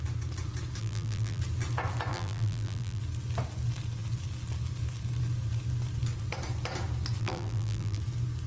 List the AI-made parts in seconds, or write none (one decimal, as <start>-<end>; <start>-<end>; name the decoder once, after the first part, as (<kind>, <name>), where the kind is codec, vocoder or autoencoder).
0.8-1.4 (vocoder, BigVGAN v2); 2.1-3.0; 7.2-8.0